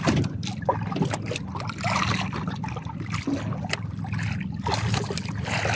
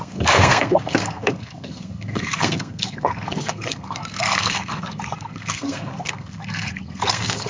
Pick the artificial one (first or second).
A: second